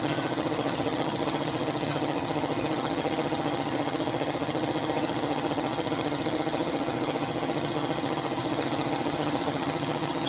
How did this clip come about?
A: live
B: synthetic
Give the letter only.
B